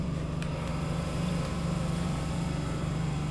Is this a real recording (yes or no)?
no